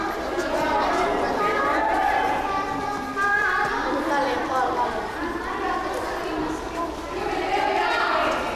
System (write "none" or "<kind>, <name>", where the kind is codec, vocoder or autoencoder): none